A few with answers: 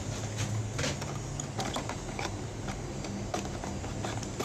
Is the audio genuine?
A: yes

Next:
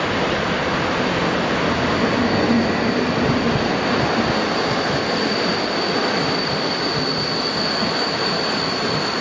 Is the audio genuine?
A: yes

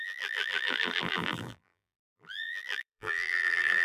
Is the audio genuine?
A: no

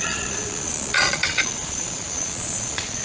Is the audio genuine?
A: no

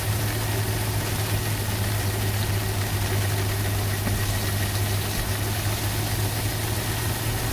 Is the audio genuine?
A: yes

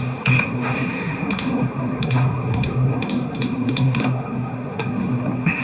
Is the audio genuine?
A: no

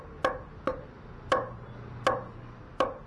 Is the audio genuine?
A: yes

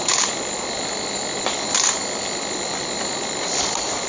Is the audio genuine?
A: yes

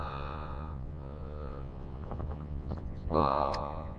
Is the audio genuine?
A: no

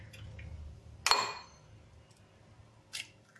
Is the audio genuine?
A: yes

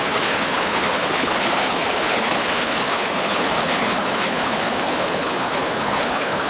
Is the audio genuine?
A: no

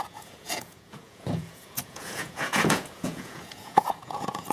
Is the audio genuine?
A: no